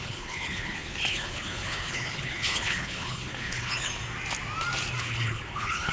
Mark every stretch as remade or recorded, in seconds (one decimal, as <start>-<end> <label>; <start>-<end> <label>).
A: 0.0-3.9 remade; 3.9-5.0 recorded; 5.0-5.9 remade